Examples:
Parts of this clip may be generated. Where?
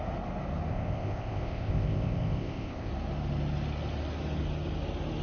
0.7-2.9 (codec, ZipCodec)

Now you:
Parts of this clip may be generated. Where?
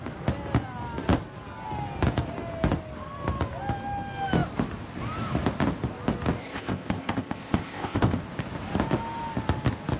6.4-8.2 (codec, ZipCodec)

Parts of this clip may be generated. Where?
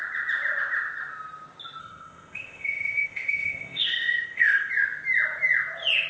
1.8-4.7 (codec, ZipCodec)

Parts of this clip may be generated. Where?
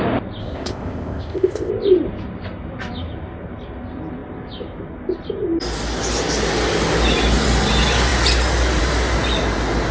0.4-1.7 (codec, ZipCodec)